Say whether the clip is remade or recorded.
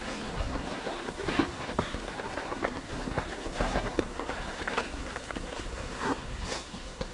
remade